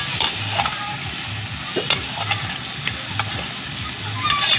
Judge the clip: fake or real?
real